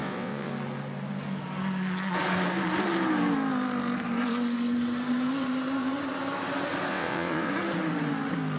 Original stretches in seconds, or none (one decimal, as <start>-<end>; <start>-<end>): 0.5-6.9; 7.5-8.6